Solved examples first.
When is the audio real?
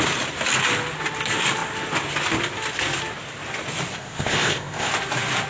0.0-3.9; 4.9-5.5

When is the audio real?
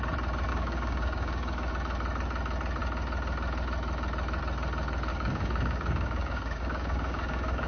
0.0-0.5; 1.7-5.1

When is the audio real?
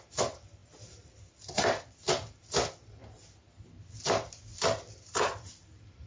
none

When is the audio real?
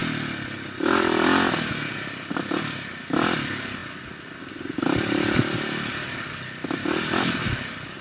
0.0-8.0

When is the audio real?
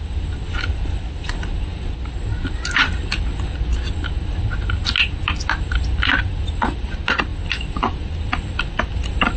0.0-9.4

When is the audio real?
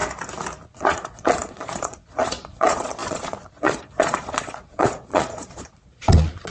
0.0-0.7